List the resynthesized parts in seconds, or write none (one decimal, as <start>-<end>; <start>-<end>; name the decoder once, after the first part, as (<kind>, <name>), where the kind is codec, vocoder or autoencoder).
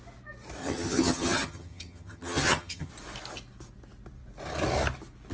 0.6-2.9 (vocoder, HiFi-GAN)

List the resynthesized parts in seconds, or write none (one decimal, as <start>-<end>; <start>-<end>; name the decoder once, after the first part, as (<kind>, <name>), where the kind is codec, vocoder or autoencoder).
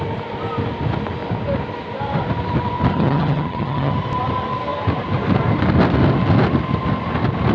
2.9-3.9 (vocoder, HiFi-GAN)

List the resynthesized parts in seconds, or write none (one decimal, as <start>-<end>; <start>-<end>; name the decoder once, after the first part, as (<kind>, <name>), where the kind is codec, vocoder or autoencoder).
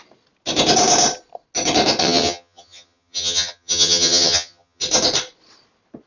2.0-4.8 (vocoder, HiFi-GAN)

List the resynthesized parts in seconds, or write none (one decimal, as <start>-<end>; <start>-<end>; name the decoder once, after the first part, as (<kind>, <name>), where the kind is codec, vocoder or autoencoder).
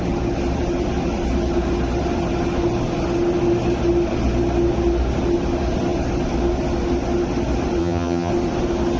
7.8-8.3 (vocoder, HiFi-GAN)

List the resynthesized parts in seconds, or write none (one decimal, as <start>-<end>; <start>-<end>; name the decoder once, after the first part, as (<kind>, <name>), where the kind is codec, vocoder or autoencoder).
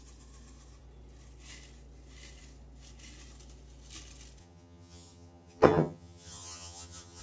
4.4-7.2 (vocoder, HiFi-GAN)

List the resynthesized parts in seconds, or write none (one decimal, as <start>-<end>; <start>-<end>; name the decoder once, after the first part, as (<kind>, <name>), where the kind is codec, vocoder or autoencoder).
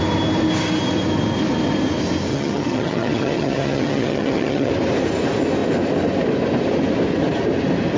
2.3-4.7 (vocoder, HiFi-GAN)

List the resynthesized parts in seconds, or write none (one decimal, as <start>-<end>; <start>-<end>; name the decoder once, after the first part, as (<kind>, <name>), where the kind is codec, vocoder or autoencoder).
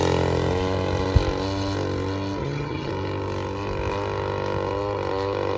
2.4-2.9 (vocoder, HiFi-GAN)